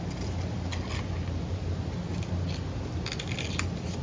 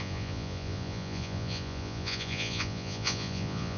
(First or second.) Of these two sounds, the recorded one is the first